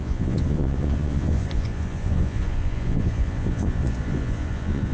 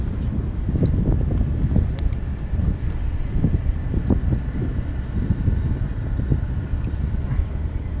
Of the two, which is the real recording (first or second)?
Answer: second